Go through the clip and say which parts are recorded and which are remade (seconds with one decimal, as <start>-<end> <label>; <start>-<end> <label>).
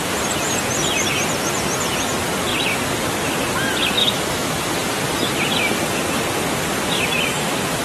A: 0.0-4.0 recorded; 4.0-4.7 remade; 4.7-7.8 recorded